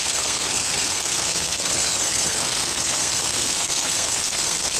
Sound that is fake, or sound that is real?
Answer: fake